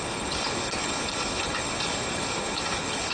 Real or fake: fake